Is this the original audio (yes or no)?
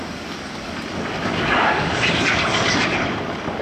no